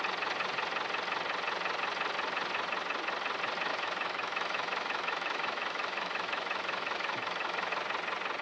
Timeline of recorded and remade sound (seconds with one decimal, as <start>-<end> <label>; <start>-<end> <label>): 0.0-3.7 recorded; 3.7-7.7 remade; 7.7-8.4 recorded